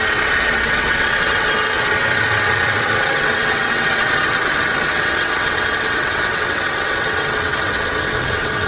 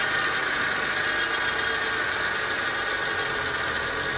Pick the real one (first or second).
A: second